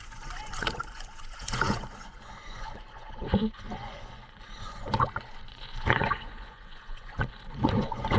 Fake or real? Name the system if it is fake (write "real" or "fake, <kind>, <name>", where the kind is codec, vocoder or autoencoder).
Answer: fake, vocoder, Vocos